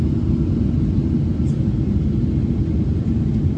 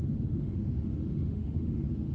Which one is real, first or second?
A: first